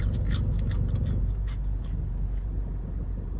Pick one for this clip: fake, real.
real